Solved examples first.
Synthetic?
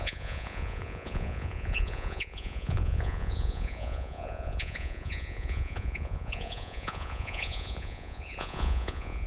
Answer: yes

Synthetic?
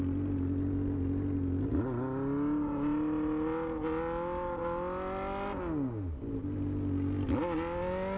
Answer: no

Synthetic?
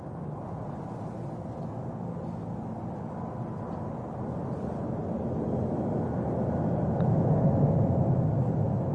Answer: no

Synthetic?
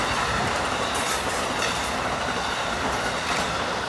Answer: yes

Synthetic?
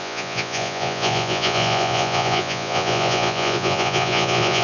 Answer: yes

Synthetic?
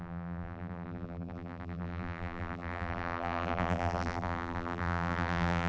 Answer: yes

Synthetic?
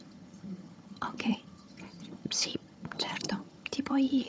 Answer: yes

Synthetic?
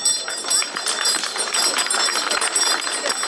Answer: yes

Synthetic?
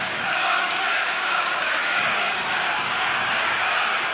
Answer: yes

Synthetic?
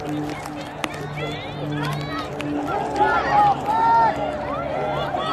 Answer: no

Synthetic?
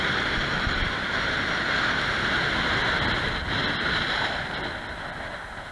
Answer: no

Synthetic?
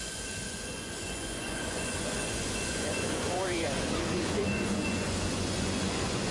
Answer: yes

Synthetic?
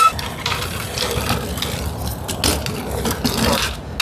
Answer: no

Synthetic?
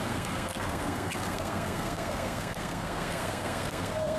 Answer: yes